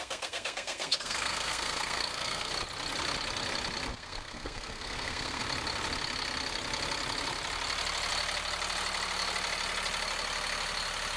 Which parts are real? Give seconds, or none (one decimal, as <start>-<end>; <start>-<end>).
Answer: 2.5-3.9; 5.4-11.2